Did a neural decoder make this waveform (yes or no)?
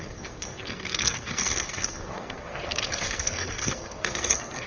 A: yes